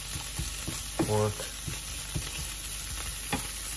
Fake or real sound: real